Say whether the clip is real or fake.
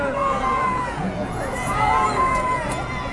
fake